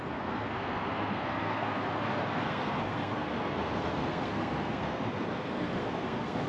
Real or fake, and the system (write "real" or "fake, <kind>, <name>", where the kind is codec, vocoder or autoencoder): fake, codec, SNAC